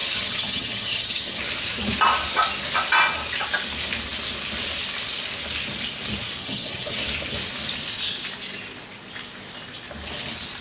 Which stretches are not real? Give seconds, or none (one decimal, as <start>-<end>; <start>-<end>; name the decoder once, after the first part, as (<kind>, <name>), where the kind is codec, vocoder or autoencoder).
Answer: 0.0-1.4 (vocoder, HiFi-GAN); 6.4-7.0